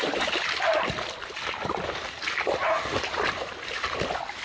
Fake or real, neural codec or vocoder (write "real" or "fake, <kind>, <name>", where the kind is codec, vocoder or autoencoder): real